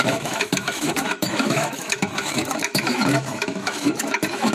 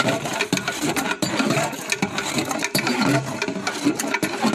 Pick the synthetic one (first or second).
first